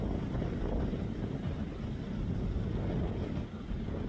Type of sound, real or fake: real